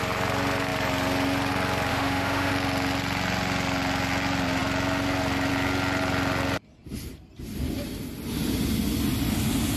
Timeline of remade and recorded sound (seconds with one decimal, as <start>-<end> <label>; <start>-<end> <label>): 0.0-1.9 recorded; 1.9-2.5 remade; 2.5-9.8 recorded